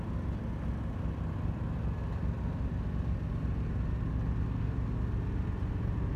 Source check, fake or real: real